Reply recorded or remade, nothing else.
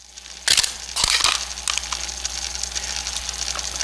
recorded